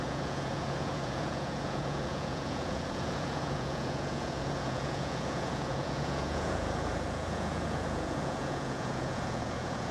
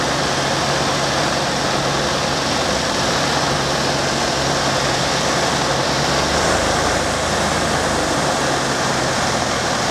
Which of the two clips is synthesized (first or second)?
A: first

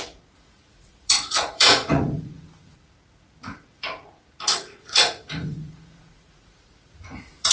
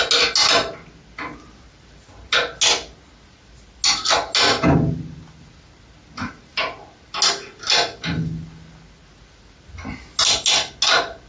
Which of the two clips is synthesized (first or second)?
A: first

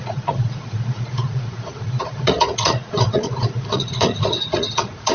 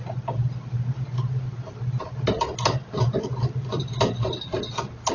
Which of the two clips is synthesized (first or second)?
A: first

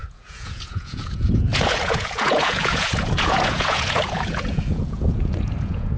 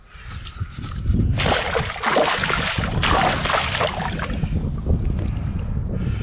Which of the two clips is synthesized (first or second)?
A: first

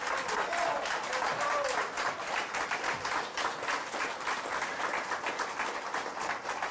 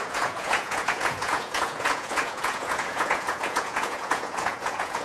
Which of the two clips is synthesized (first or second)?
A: second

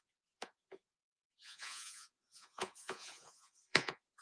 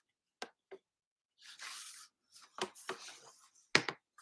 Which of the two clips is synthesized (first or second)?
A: first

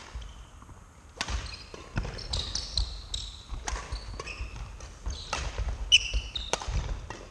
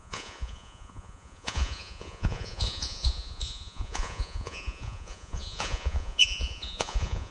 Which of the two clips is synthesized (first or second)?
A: second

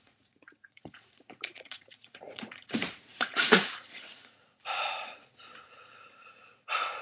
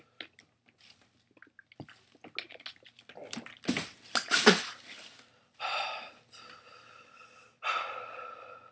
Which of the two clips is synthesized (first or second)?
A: first